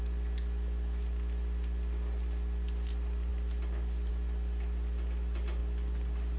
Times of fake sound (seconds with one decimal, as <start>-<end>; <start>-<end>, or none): none